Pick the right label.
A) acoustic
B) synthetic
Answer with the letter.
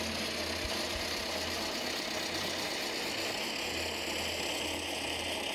A